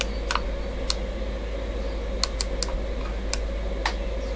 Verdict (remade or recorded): recorded